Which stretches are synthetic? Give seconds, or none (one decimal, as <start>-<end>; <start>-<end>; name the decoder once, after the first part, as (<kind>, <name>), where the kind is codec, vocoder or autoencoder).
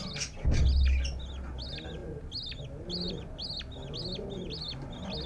none